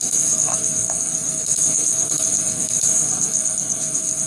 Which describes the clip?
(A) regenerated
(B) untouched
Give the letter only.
A